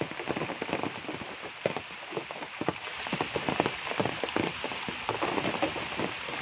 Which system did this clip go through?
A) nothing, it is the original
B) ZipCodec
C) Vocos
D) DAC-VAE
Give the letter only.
A